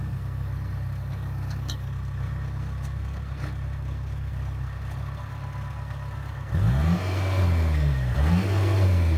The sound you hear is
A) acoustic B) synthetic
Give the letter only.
B